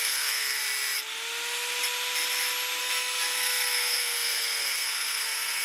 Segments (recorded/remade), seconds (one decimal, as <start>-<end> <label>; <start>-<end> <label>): 0.0-0.6 remade; 0.6-2.8 recorded; 2.8-5.6 remade